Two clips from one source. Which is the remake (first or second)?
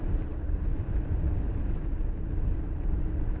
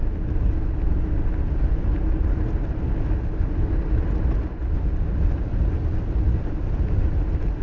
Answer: first